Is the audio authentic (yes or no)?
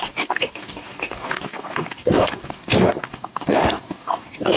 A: no